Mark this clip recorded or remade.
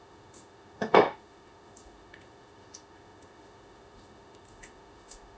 remade